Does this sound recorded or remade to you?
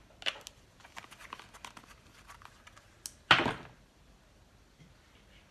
recorded